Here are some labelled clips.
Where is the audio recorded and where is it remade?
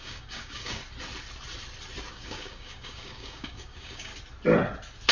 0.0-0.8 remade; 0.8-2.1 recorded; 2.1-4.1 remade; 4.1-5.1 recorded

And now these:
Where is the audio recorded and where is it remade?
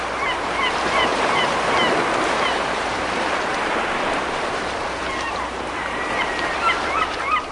0.0-7.5 remade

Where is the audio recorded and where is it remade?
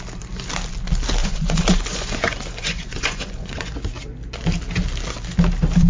0.0-1.2 recorded; 1.2-3.7 remade; 3.7-5.9 recorded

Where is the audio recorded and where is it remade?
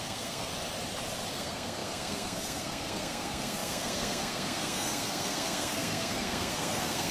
0.0-0.5 remade; 0.5-1.3 recorded; 1.3-7.1 remade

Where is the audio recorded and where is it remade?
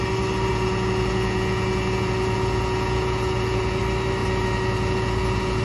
0.0-0.5 recorded; 0.5-3.8 remade; 3.8-4.2 recorded; 4.2-5.6 remade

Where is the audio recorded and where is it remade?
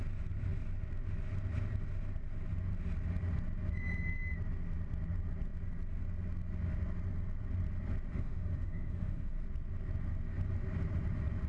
0.0-8.1 recorded; 8.1-9.4 remade; 9.4-11.5 recorded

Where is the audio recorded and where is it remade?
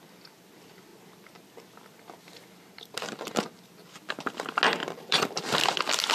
0.0-4.8 recorded; 4.8-5.4 remade; 5.4-6.1 recorded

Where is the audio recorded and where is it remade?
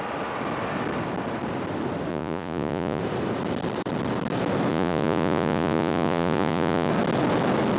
0.0-2.1 recorded; 2.1-3.0 remade; 3.0-4.7 recorded; 4.7-6.9 remade; 6.9-7.8 recorded